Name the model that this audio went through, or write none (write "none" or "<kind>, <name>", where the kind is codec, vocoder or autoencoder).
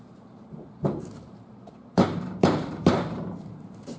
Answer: vocoder, BigVGAN v2